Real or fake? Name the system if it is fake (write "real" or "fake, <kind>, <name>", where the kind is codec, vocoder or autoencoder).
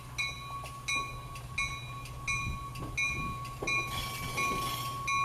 real